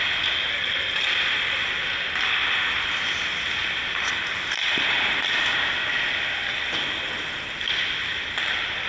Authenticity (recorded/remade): recorded